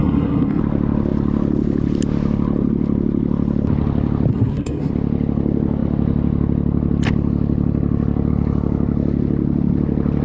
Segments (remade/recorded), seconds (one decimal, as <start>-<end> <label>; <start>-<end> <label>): 0.0-0.6 remade; 0.6-4.3 recorded; 4.3-4.9 remade; 4.9-10.2 recorded